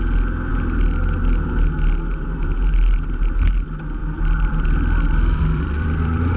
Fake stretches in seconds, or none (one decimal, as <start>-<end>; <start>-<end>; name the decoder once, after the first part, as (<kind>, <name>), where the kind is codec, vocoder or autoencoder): 4.0-6.4 (vocoder, BigVGAN v2)